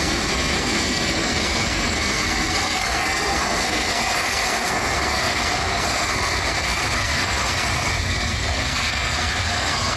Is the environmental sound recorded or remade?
remade